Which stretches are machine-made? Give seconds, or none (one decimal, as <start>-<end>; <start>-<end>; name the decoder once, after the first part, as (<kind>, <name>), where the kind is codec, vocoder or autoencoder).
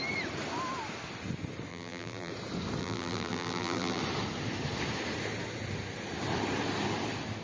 1.7-2.3 (vocoder, BigVGAN v2); 2.8-4.0